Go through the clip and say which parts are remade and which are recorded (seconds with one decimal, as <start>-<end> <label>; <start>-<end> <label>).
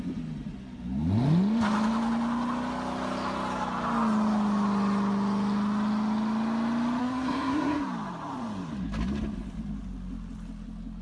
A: 0.0-7.0 recorded; 7.0-7.8 remade; 7.8-11.0 recorded